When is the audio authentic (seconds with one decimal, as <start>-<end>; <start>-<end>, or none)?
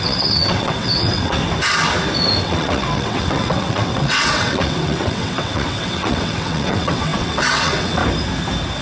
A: 1.4-2.4; 8.0-8.8